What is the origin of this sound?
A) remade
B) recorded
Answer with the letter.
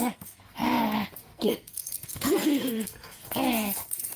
A